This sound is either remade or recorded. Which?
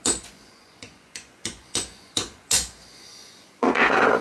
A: remade